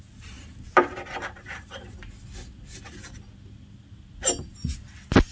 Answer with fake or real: real